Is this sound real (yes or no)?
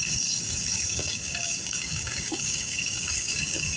no